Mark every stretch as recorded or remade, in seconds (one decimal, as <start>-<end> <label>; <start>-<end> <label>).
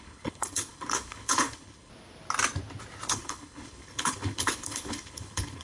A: 0.0-1.9 remade; 1.9-3.1 recorded; 3.1-5.6 remade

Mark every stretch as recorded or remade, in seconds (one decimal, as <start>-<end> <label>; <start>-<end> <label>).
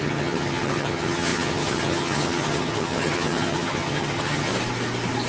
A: 0.0-4.5 remade; 4.5-5.3 recorded